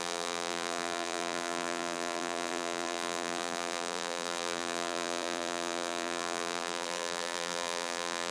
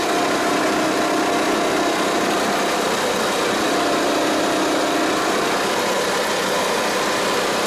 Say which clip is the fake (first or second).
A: first